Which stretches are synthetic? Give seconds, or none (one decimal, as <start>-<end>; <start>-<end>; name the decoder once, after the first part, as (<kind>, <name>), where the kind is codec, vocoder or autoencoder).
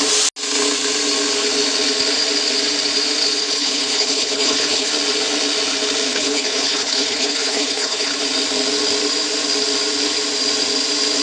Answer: 3.4-4.9 (codec, HILCodec); 6.1-8.2